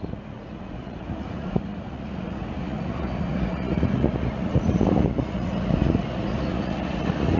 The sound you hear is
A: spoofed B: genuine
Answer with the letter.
A